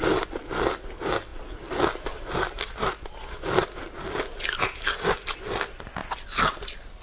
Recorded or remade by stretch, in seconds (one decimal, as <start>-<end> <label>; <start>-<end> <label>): 0.0-7.0 recorded